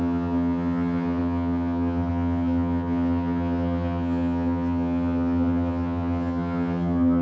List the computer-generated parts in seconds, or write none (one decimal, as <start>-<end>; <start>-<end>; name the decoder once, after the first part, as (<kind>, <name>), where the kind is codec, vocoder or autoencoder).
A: 0.0-7.2 (vocoder, HiFi-GAN)